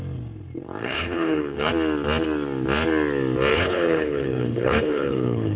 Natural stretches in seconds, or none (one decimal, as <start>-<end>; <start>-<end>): 0.0-0.8; 1.7-3.5